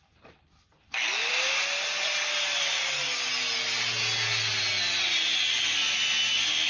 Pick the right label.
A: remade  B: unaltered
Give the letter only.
B